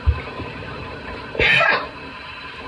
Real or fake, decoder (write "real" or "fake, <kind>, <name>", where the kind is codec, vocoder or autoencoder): fake, vocoder, BigVGAN v2